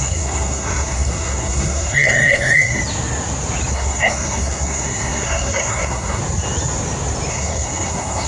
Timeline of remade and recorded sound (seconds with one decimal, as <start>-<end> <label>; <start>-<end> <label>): 0.0-2.8 remade; 2.8-3.7 recorded; 3.7-6.2 remade; 6.2-7.3 recorded; 7.3-8.3 remade